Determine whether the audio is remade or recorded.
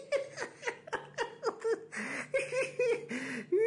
recorded